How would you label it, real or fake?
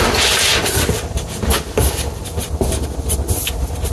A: real